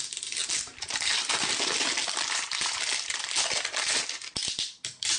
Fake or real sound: real